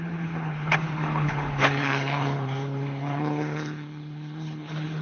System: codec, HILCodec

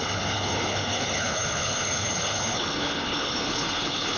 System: codec, HILCodec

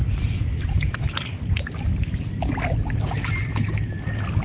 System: none